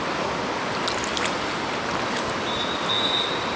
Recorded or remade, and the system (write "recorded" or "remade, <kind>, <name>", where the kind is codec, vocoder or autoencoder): recorded